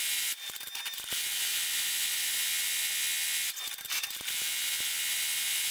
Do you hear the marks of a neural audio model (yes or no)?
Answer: no